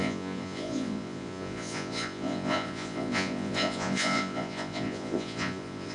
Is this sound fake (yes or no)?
yes